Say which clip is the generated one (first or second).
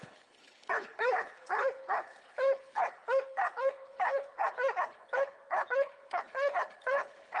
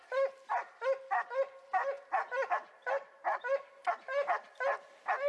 first